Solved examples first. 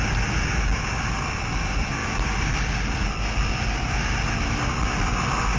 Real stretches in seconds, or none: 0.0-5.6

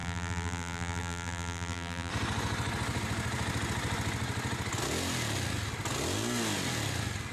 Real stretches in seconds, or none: 2.1-7.3

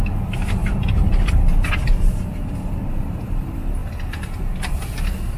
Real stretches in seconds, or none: 0.0-0.6; 3.2-5.4